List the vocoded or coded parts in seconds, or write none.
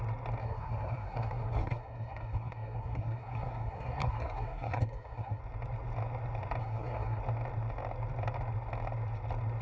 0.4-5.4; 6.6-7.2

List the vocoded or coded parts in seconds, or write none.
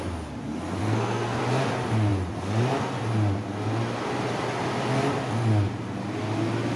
0.8-1.4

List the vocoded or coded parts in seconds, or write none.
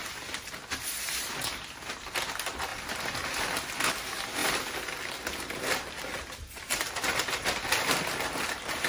none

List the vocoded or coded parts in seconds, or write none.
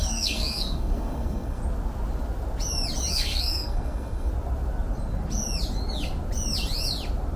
0.0-1.6; 3.1-4.3